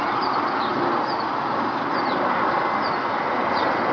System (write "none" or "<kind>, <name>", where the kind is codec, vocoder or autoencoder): none